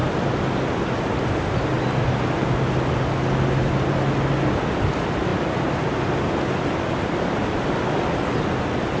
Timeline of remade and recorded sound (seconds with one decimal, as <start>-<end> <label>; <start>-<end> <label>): 0.0-9.0 recorded